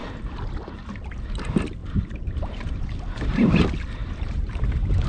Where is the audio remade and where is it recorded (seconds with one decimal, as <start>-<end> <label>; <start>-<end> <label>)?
0.0-1.8 recorded; 1.8-3.6 remade; 3.6-4.0 recorded; 4.0-5.1 remade